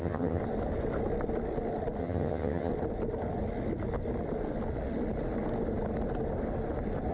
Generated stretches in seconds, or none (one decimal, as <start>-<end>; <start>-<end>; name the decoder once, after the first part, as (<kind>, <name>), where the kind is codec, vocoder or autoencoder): 0.0-0.4 (vocoder, HiFi-GAN); 2.0-2.7